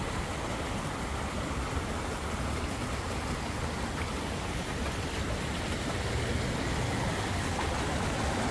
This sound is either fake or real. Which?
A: real